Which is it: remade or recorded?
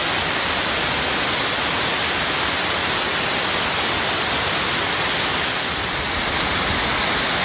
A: recorded